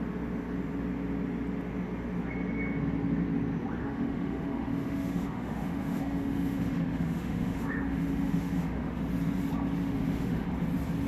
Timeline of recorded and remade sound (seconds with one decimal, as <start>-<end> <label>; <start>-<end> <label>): 0.0-3.8 recorded; 3.8-9.0 remade; 9.0-9.8 recorded; 9.8-10.5 remade; 10.5-11.1 recorded